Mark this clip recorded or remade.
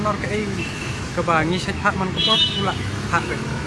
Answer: remade